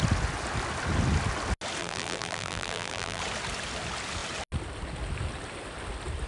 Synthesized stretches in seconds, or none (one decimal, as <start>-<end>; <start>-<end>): 1.8-3.2

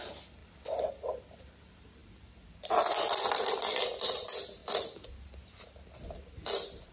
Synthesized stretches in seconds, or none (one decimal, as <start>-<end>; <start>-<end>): none

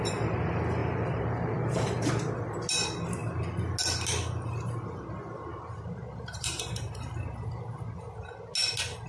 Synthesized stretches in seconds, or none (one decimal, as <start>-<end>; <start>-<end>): 0.8-2.1; 5.5-6.9

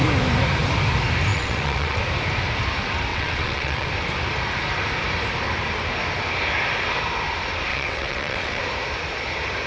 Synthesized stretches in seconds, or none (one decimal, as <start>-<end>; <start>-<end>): 1.3-2.0; 3.1-3.9; 7.7-8.6

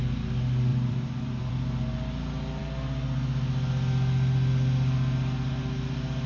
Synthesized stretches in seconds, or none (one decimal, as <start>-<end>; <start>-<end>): 0.7-1.5

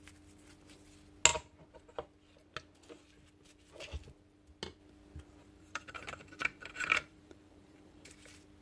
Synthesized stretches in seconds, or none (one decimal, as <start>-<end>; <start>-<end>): 5.4-8.1